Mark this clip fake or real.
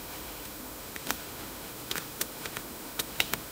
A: fake